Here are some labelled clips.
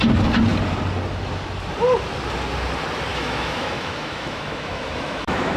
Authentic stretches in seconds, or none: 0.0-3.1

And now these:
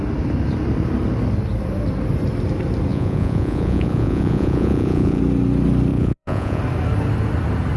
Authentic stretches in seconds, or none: 0.0-2.9; 5.2-5.9; 6.6-7.8

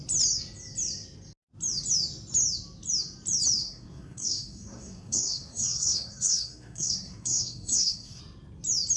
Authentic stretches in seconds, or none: 0.0-3.6; 8.2-9.0

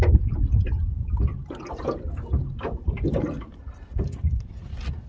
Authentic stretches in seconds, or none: 0.0-5.1

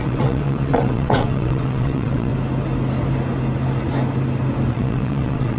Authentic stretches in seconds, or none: 2.3-4.7

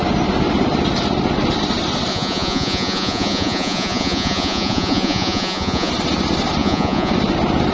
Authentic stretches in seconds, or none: 0.0-2.1; 5.9-6.6; 7.1-7.7